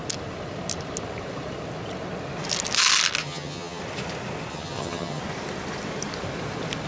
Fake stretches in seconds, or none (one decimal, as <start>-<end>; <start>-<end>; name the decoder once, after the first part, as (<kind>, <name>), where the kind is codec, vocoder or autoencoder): 3.2-3.8 (vocoder, HiFi-GAN); 4.5-5.2